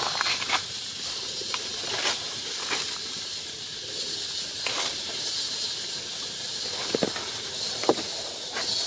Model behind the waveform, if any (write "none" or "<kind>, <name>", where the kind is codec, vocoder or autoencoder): none